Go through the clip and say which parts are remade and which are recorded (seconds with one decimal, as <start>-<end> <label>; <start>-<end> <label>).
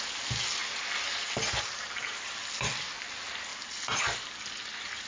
0.0-5.1 recorded